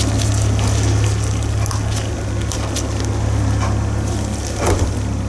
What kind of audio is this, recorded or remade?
recorded